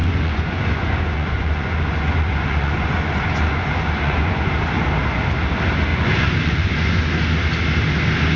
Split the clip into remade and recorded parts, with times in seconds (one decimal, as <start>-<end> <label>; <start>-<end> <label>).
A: 0.0-4.5 remade; 4.5-5.9 recorded; 5.9-7.1 remade; 7.1-8.4 recorded